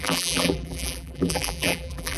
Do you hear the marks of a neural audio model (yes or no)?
yes